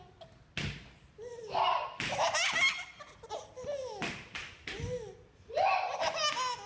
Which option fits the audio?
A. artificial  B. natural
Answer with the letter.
B